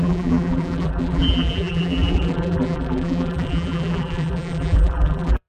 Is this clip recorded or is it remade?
remade